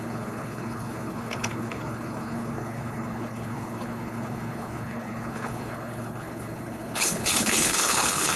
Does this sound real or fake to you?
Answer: fake